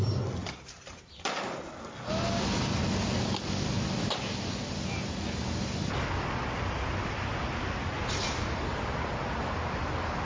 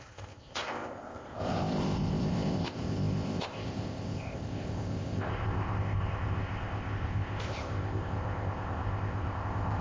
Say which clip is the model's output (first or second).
second